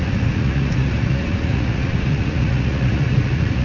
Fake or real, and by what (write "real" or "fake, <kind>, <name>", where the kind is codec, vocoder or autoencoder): fake, vocoder, Vocos